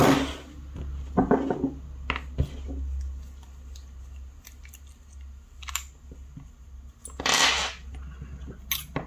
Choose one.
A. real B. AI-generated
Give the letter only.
A